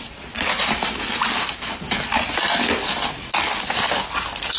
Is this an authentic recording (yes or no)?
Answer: no